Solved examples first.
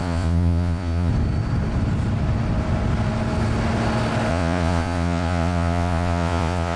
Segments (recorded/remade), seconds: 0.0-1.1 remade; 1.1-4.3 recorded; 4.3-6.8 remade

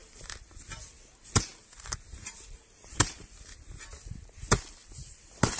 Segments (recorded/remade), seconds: 0.0-5.6 recorded

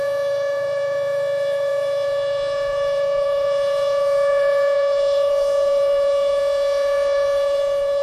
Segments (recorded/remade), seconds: 0.0-8.0 remade

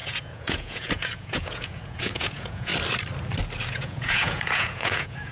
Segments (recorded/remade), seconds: 0.0-2.7 remade; 2.7-3.7 recorded; 3.7-5.3 remade

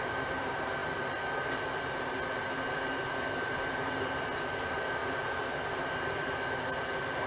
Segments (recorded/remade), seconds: 0.0-7.3 recorded

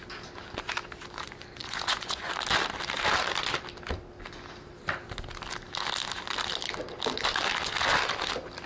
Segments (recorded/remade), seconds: 0.0-1.6 recorded; 1.6-2.3 remade; 2.3-8.7 recorded